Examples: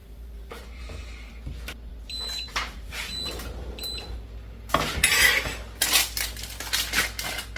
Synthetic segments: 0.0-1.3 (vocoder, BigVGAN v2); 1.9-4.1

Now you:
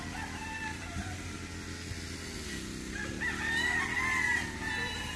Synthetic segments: 0.4-1.5 (vocoder, BigVGAN v2); 4.3-5.2